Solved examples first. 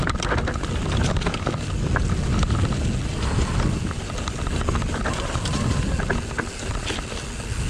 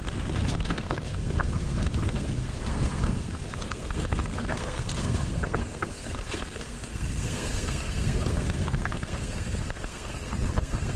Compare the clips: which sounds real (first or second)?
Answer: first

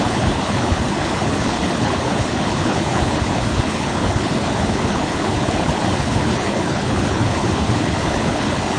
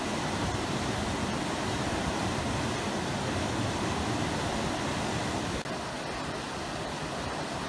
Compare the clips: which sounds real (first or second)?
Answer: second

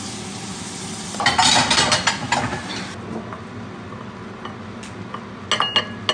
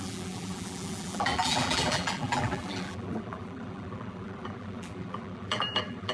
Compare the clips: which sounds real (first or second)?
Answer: first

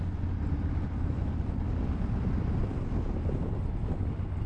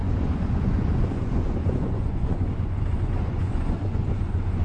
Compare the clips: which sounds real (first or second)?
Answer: first